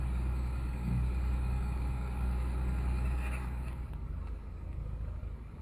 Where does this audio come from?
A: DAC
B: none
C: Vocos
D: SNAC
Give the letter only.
A